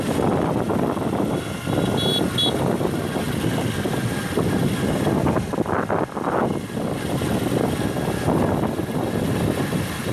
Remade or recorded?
recorded